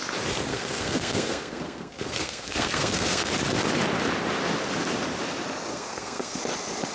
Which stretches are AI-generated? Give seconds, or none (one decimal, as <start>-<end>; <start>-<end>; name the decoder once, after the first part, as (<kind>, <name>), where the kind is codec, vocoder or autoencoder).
0.5-3.3 (codec, SNAC); 5.7-6.4